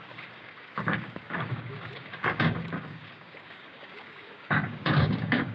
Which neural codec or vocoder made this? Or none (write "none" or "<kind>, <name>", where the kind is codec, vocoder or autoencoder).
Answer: codec, DAC